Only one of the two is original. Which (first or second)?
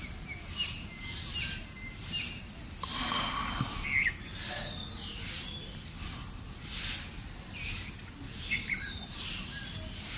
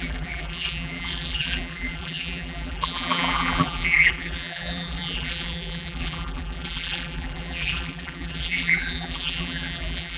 first